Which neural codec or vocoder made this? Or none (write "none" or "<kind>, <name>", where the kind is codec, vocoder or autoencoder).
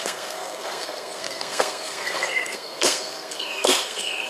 codec, SNAC